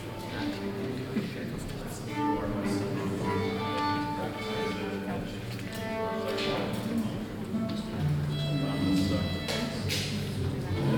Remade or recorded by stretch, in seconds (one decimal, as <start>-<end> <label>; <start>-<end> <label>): 0.0-11.0 recorded